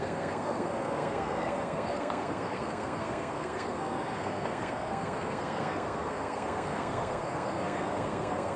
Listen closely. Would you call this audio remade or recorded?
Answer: remade